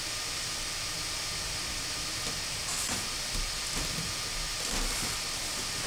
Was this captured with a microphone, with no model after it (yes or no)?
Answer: yes